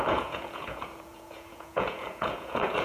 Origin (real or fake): fake